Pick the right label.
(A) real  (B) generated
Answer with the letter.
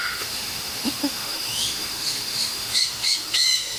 B